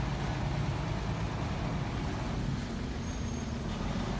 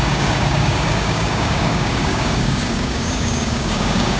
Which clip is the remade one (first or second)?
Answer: second